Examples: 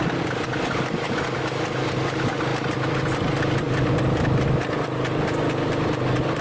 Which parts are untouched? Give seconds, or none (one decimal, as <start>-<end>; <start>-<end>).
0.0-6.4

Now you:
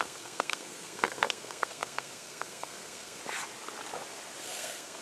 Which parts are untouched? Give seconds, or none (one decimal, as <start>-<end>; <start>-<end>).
3.2-4.4

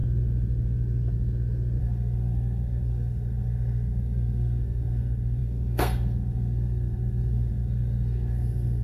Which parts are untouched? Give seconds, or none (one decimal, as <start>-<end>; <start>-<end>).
0.0-1.8

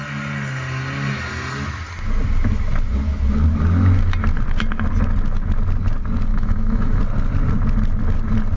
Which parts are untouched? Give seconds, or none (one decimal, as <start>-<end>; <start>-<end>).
0.0-6.3; 7.0-8.6